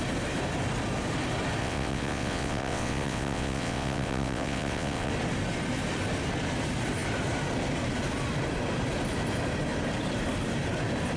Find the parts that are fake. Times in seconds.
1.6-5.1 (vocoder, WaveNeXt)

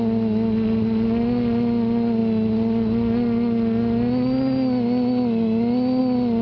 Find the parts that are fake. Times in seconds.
none

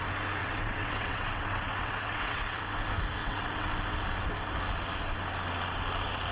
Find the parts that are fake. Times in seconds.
0.4-2.6 (vocoder, WaveNeXt); 3.2-3.7

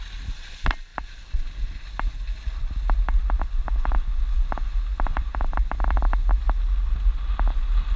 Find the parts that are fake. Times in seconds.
none

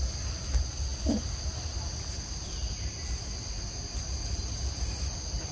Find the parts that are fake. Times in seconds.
none

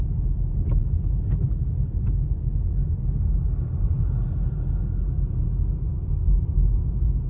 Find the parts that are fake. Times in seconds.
none

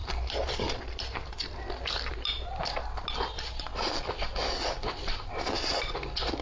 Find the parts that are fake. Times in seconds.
none